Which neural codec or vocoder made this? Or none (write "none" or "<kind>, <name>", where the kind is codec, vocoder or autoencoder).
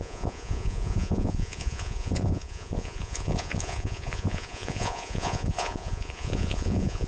vocoder, Vocos